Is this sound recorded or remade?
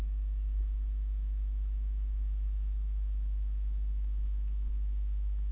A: remade